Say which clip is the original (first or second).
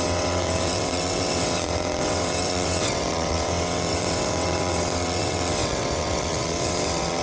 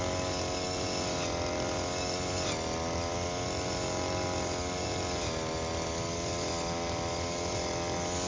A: second